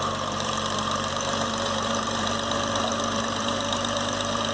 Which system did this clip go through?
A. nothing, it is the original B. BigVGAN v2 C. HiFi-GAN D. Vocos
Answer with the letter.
B